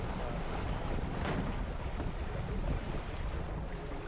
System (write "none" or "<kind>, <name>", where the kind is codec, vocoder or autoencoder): none